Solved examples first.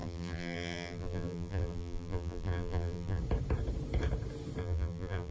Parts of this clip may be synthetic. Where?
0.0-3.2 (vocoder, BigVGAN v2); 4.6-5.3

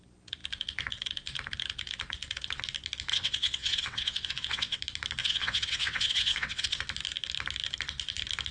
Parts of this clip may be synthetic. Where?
3.1-4.8 (vocoder, WaveNeXt); 5.2-6.8

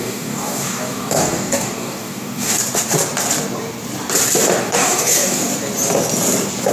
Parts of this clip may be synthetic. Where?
0.0-2.6 (codec, DAC); 4.6-5.5